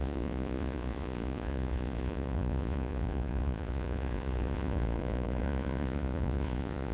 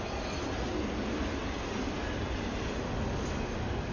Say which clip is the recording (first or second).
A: second